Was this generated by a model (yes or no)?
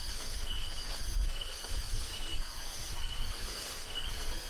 yes